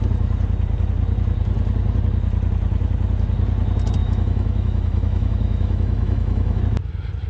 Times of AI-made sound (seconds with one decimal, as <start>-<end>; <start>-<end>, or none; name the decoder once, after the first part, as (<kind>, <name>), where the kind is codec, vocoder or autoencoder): 4.0-6.6 (autoencoder, DAC-VAE)